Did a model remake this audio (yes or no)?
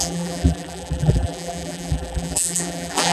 yes